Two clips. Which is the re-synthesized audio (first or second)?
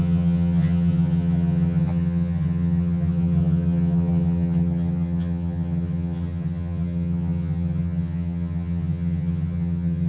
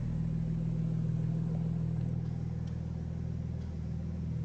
first